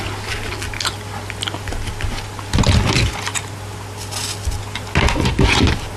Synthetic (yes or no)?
no